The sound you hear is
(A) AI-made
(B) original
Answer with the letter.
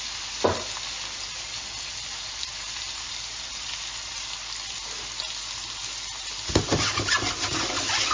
B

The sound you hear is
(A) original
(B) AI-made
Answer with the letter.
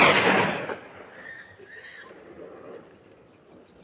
A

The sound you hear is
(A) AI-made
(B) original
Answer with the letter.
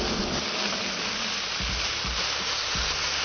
B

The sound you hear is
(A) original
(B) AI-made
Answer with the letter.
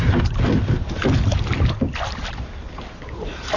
A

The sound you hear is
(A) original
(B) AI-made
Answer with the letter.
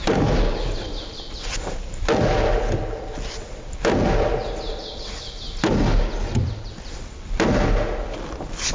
A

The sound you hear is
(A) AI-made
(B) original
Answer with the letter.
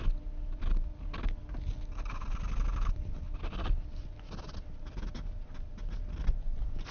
B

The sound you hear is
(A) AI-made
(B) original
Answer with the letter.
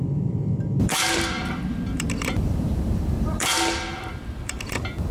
A